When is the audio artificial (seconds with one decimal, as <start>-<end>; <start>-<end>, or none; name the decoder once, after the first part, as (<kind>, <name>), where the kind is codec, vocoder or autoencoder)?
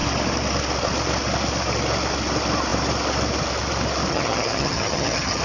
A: 4.1-5.4 (vocoder, HiFi-GAN)